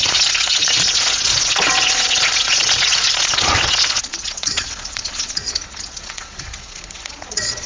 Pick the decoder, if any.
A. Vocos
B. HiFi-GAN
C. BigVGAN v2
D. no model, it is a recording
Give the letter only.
A